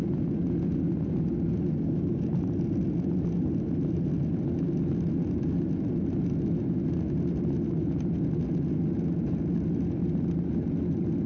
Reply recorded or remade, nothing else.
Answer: recorded